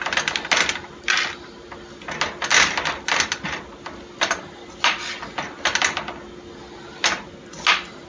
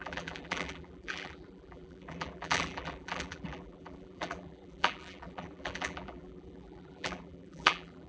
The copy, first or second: second